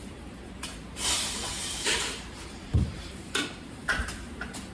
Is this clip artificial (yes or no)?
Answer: yes